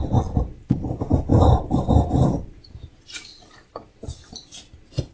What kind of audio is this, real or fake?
real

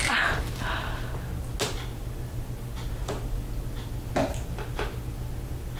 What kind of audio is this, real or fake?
real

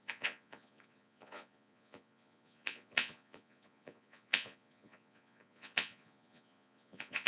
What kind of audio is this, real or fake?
fake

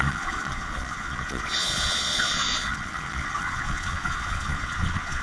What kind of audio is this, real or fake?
fake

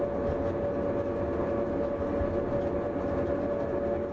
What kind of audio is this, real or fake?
real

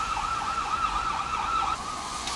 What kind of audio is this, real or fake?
fake